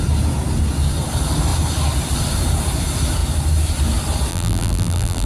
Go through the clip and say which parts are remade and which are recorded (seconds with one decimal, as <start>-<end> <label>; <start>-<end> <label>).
0.0-4.3 recorded; 4.3-5.3 remade